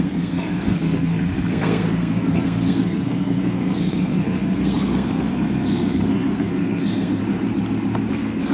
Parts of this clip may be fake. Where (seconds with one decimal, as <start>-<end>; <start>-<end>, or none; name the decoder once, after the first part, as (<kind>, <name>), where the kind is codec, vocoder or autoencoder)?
0.0-7.2 (codec, SNAC); 8.1-8.5